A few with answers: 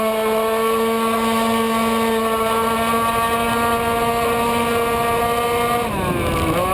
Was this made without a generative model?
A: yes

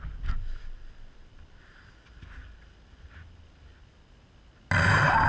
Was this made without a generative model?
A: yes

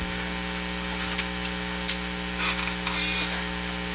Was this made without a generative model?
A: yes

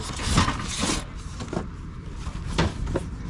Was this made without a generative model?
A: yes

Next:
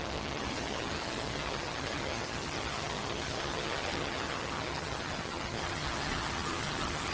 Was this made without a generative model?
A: no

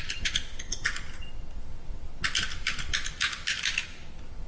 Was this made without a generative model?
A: yes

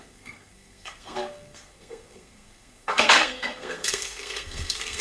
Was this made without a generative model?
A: no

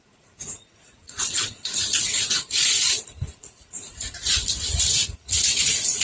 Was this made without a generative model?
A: no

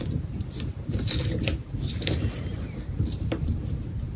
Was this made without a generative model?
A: no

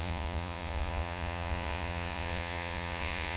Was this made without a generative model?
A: no